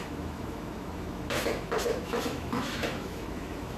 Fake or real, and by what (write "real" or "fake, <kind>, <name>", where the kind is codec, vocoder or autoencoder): fake, autoencoder, DAC-VAE